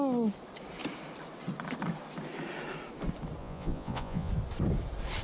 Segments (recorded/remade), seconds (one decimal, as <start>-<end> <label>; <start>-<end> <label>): 0.0-3.4 recorded; 3.4-4.3 remade; 4.3-5.2 recorded

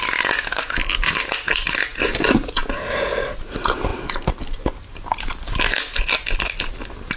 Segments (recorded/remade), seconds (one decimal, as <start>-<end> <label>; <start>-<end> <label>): 0.0-7.2 recorded